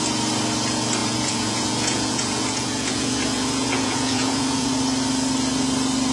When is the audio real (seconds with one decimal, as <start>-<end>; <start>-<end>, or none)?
0.0-1.0; 4.7-6.1